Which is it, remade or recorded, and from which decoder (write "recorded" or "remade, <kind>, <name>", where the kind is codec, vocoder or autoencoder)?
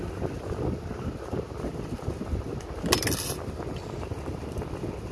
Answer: recorded